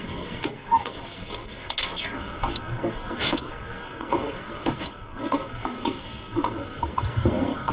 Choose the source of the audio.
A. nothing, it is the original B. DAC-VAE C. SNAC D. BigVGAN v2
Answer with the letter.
C